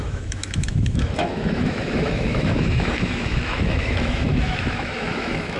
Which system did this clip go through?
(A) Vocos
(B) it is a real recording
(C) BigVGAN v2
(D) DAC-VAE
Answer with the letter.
D